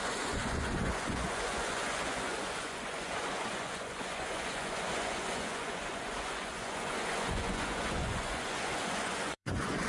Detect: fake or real fake